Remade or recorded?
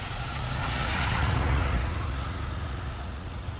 remade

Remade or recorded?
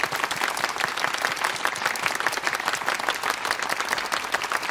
recorded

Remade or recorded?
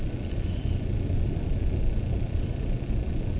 recorded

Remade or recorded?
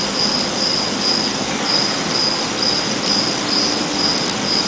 recorded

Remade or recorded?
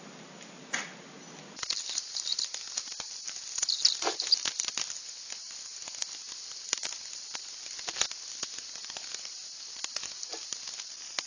recorded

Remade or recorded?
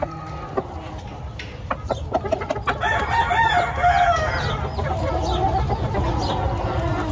recorded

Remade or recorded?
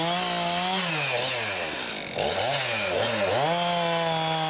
recorded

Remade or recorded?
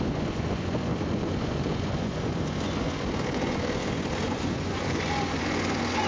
remade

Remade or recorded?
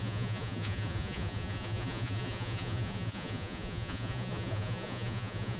remade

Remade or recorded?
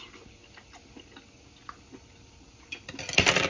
recorded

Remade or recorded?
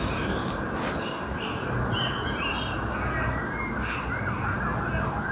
recorded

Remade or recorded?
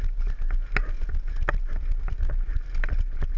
recorded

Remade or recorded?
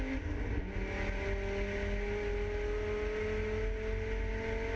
recorded